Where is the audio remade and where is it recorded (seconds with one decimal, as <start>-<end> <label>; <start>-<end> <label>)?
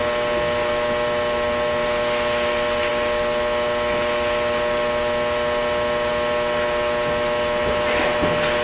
0.0-8.6 recorded